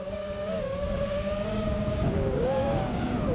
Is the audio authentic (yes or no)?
no